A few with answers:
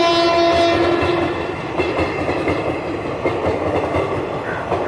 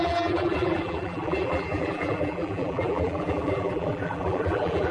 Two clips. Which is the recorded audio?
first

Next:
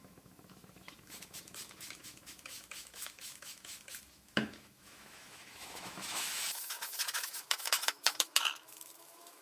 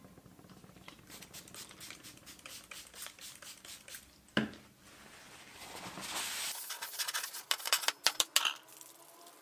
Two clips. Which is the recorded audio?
second